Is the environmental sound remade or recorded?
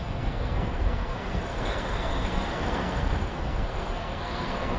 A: remade